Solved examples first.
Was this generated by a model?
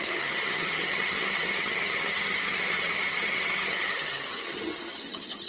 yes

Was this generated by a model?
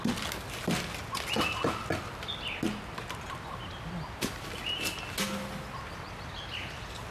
no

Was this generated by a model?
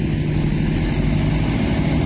no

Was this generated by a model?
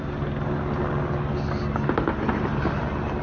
no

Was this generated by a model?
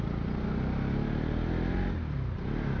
no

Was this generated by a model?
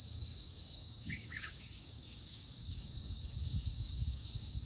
yes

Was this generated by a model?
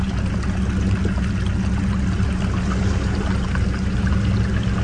no